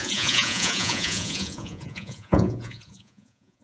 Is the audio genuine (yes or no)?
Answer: no